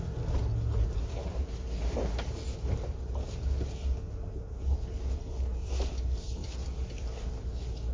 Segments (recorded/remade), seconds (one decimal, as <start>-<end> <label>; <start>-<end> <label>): 0.0-7.9 recorded